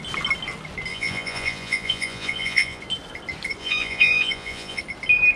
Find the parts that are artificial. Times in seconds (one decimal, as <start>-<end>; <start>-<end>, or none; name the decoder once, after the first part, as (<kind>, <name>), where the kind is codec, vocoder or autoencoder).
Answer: 0.9-2.8 (vocoder, Vocos); 3.6-4.8